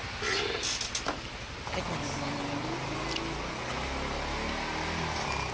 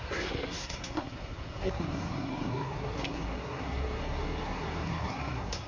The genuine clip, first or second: first